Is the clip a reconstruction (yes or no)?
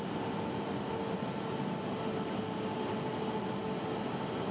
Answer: no